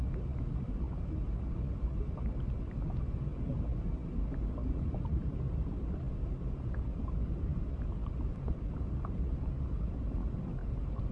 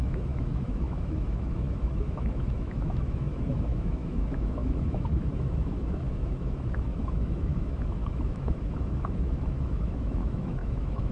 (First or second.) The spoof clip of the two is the second